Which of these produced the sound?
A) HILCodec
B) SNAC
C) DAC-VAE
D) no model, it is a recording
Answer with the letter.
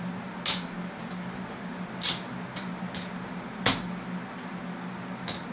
D